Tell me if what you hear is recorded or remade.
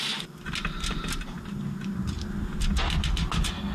recorded